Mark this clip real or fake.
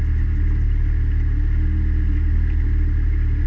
real